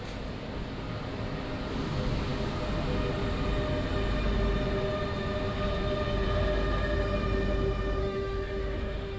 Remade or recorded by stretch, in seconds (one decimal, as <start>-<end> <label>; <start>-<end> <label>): 0.0-8.0 recorded; 8.0-9.2 remade